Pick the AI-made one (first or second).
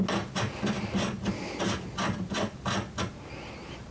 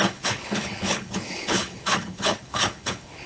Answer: second